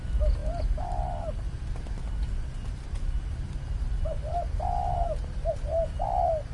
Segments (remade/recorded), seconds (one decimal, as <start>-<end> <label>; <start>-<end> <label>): 0.0-6.5 recorded